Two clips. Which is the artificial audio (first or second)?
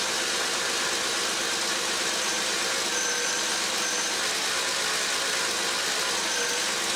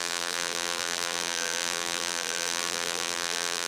second